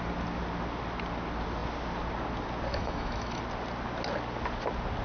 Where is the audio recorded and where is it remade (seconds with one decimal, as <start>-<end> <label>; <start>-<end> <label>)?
0.0-2.7 recorded; 2.7-3.4 remade; 3.4-5.0 recorded